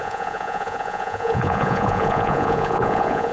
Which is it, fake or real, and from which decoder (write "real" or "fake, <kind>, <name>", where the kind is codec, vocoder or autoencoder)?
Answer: fake, vocoder, Vocos